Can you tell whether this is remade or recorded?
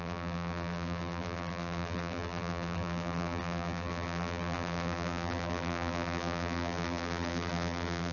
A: remade